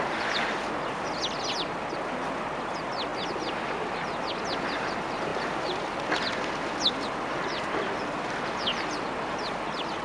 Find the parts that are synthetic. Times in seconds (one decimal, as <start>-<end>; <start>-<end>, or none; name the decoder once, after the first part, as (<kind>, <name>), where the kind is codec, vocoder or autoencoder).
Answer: 0.0-3.1 (vocoder, BigVGAN v2); 4.3-10.0